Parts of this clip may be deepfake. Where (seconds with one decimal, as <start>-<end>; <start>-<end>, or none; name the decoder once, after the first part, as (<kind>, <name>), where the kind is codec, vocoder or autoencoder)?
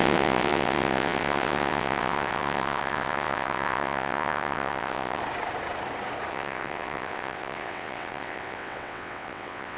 0.0-5.2 (vocoder, WaveNeXt); 6.3-9.8